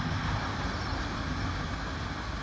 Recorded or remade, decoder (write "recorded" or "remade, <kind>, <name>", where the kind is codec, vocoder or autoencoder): recorded